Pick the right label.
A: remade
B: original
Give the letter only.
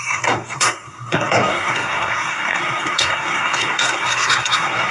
A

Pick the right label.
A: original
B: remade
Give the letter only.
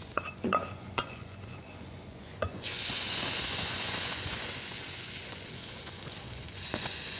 B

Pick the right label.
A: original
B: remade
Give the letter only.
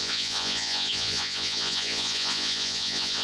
B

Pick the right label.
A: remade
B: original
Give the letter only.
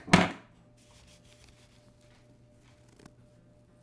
B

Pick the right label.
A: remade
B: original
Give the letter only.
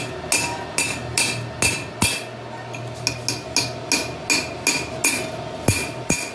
B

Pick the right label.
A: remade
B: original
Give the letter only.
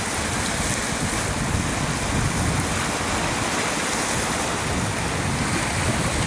B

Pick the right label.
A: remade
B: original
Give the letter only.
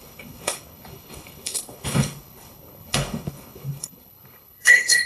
A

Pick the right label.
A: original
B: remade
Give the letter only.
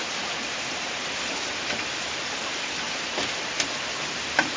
A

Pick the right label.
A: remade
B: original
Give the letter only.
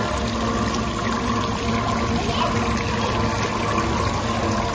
B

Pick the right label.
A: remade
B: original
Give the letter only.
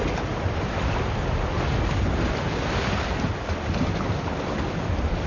B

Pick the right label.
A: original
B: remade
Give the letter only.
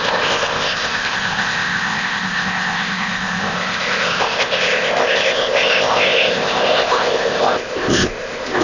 B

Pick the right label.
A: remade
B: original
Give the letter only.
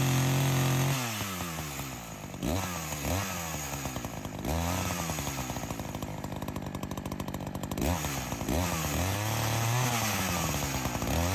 B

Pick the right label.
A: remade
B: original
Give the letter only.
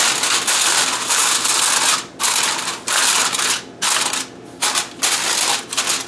B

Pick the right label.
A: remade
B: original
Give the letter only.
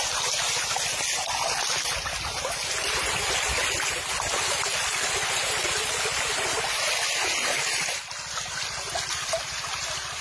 B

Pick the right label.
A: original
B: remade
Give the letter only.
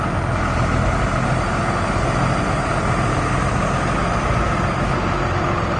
A